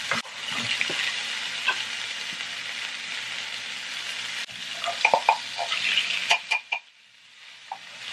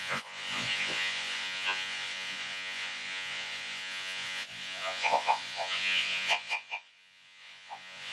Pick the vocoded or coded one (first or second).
second